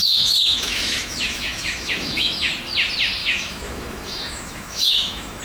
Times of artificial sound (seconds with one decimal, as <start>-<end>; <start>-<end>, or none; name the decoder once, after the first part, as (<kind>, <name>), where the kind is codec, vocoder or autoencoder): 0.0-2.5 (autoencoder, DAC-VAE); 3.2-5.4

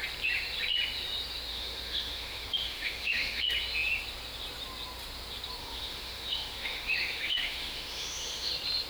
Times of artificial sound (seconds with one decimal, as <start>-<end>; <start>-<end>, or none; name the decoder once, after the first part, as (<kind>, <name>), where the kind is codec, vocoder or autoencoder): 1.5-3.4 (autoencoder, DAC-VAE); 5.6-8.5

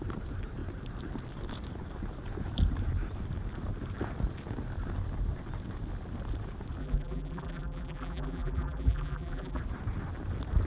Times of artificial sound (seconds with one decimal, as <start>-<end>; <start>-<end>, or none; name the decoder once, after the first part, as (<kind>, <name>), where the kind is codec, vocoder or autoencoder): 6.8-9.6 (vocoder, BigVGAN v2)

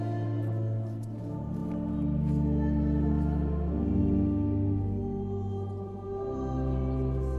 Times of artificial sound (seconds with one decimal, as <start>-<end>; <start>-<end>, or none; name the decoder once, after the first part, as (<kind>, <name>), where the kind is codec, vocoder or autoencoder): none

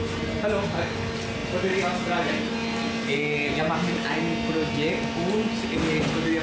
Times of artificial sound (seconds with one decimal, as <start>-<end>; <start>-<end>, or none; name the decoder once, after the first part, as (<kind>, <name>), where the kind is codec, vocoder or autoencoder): none

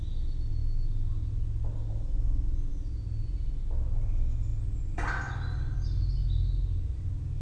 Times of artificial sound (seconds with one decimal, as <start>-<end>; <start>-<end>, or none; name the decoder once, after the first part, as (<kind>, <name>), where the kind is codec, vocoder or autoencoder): none